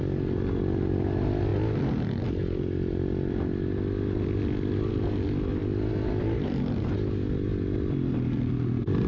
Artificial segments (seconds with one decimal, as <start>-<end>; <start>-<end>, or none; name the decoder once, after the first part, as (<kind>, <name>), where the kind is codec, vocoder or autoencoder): none